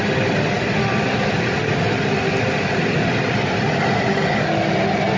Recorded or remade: recorded